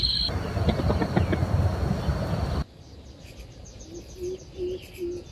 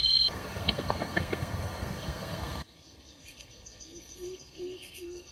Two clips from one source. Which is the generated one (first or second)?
second